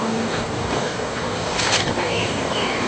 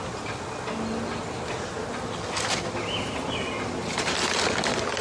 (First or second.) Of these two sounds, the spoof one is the first